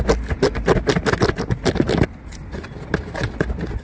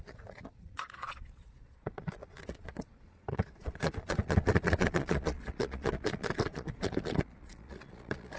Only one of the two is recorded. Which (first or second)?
first